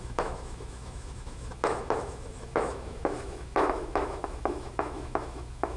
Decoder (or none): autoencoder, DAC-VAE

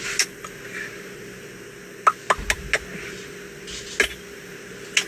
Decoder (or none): none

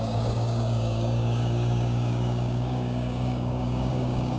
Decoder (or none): codec, DAC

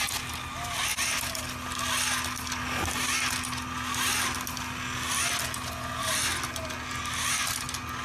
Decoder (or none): none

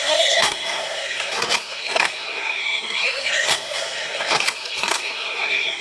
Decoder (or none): codec, SNAC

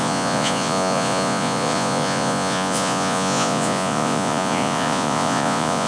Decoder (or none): vocoder, Vocos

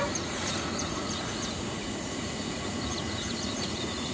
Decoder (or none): vocoder, Vocos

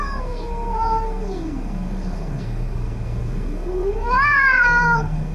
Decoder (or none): codec, SNAC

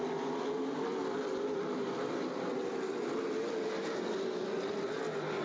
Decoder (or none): none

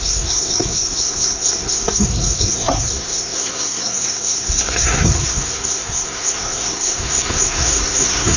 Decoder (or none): codec, SNAC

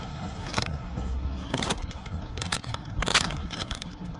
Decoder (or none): codec, SNAC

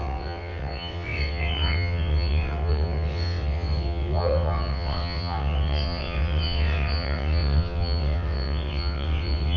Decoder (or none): vocoder, WaveNeXt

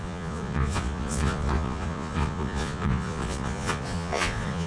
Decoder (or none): vocoder, Vocos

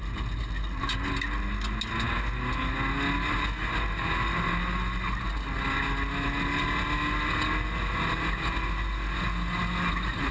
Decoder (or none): none